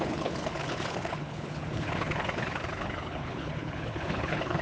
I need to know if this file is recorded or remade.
remade